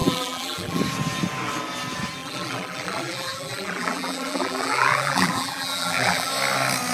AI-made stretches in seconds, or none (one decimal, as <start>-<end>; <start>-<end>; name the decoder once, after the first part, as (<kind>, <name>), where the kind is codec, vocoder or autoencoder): 0.0-0.8 (vocoder, BigVGAN v2); 2.2-6.3